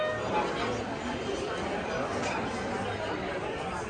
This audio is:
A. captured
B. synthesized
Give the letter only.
A